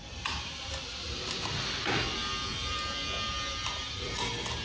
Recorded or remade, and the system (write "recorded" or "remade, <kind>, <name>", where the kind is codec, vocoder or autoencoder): remade, vocoder, BigVGAN v2